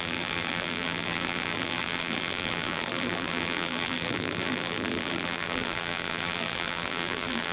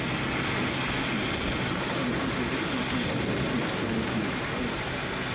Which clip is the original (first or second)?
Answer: second